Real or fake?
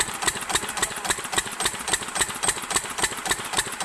real